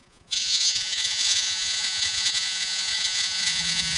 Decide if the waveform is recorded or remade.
remade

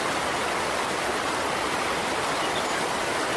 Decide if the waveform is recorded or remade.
recorded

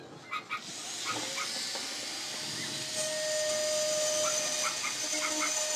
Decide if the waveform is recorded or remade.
recorded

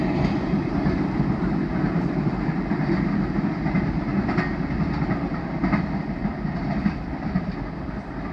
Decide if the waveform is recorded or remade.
recorded